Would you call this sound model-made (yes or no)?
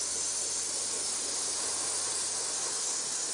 no